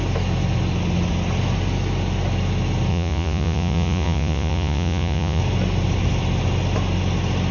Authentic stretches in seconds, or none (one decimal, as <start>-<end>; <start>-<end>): 0.0-2.9; 5.4-7.5